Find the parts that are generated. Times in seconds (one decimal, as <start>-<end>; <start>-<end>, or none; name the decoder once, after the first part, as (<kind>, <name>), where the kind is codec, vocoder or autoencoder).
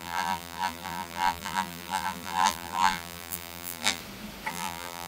0.0-4.0 (vocoder, BigVGAN v2); 4.5-5.1